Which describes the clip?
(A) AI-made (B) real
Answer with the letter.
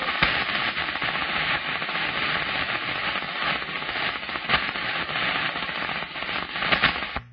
B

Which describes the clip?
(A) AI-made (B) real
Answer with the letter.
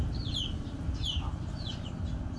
B